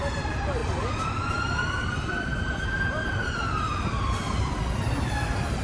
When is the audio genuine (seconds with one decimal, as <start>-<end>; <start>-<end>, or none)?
0.0-5.6